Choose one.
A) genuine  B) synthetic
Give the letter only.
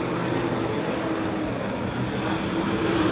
A